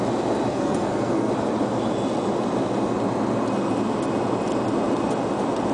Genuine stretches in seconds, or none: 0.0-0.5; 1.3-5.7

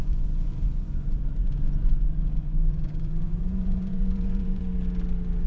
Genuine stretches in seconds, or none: 1.2-2.4; 4.6-5.5

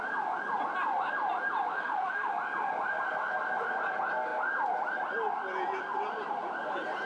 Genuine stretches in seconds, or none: 0.0-1.7; 2.3-7.1